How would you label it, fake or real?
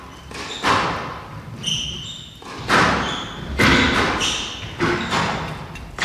real